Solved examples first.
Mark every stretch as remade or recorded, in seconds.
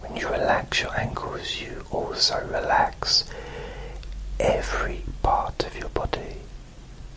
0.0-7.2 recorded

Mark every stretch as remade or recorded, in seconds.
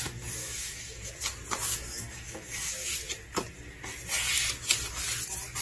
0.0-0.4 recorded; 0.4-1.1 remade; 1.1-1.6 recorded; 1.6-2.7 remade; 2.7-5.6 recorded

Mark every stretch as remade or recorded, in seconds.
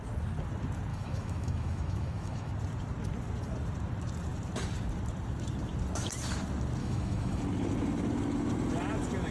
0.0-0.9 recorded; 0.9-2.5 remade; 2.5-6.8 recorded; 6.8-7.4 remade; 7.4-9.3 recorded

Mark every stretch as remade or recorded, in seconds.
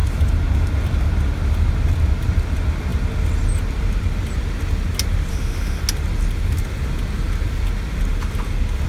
0.0-5.3 recorded; 5.3-5.8 remade; 5.8-8.9 recorded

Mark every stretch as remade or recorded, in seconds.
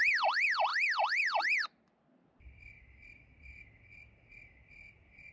0.0-5.3 recorded